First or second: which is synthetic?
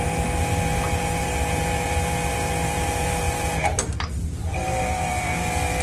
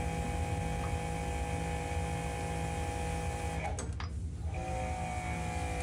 first